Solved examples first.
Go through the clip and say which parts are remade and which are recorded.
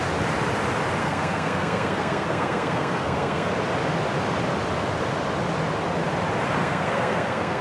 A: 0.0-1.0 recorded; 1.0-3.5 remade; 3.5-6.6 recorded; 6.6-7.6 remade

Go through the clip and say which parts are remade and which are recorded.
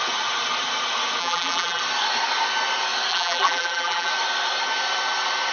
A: 0.0-1.2 recorded; 1.2-1.8 remade; 1.8-3.1 recorded; 3.1-4.1 remade; 4.1-5.5 recorded